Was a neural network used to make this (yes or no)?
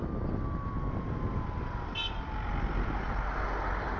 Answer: no